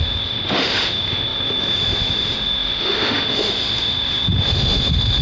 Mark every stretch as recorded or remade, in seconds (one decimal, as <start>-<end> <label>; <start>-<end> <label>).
0.0-5.2 remade